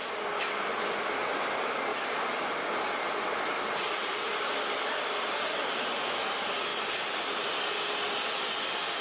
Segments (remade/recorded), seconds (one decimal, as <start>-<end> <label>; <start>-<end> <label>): 0.0-9.0 recorded